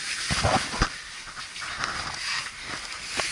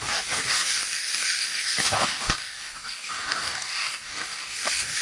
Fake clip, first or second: second